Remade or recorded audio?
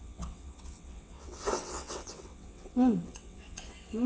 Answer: remade